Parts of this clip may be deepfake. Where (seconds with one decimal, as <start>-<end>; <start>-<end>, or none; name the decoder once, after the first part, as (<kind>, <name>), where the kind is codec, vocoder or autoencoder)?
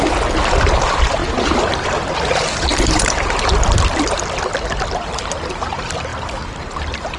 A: 2.7-3.5 (vocoder, BigVGAN v2)